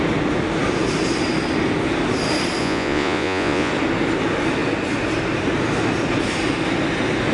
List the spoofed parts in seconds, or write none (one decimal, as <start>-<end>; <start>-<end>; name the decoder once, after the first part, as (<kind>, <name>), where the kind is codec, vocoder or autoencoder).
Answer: 2.6-3.7 (vocoder, Vocos)